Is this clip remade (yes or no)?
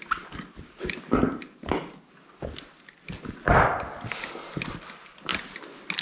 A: no